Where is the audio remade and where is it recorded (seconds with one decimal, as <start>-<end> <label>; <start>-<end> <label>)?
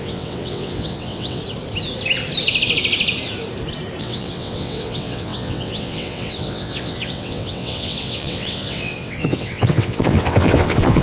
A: 0.0-1.4 remade; 1.4-4.0 recorded; 4.0-11.0 remade